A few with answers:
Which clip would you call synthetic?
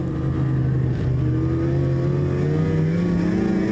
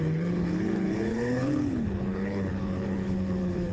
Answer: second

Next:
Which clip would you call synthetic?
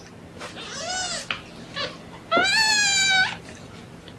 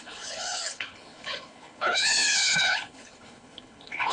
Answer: second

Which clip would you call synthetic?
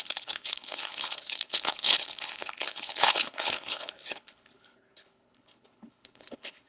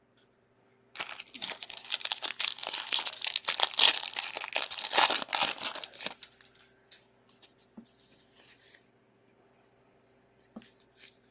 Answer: first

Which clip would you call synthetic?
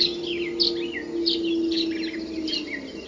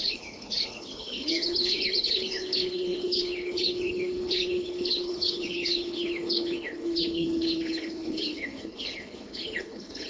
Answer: second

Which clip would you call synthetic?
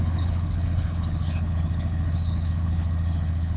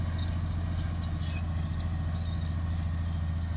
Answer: first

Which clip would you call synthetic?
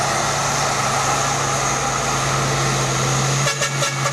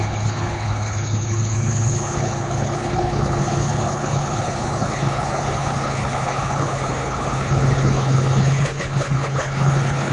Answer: second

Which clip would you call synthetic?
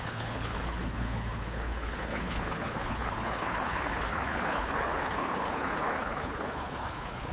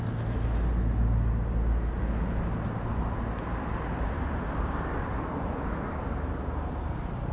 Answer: first